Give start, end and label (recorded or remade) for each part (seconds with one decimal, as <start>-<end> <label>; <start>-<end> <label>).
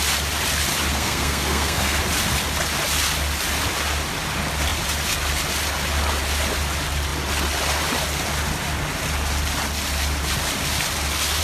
0.0-0.9 recorded; 0.9-2.0 remade; 2.0-11.4 recorded